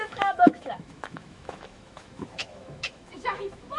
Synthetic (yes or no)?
yes